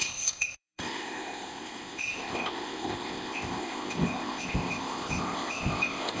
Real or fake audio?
fake